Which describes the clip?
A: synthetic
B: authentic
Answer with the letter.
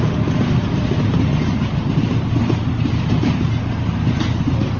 B